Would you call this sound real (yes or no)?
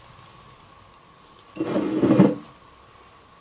yes